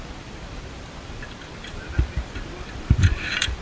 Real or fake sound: fake